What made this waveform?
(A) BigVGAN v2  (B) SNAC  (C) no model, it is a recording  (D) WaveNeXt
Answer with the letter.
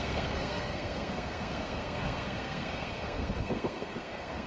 B